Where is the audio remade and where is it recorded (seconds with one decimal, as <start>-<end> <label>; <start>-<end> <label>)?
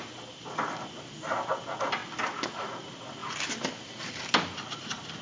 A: 0.0-5.2 recorded